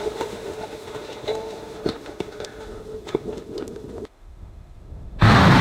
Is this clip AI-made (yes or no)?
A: yes